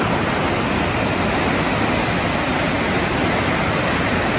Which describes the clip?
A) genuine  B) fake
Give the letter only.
A